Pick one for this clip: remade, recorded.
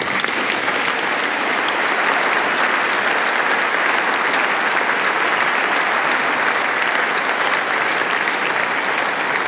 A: recorded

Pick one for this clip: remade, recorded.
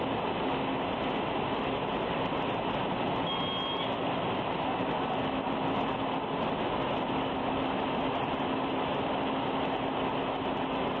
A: recorded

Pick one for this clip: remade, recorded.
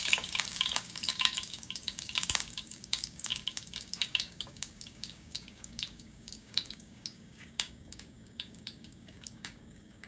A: remade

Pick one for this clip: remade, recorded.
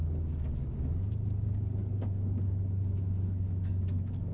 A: remade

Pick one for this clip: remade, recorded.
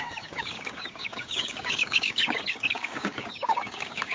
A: remade